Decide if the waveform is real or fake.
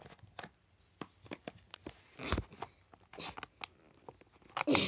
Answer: real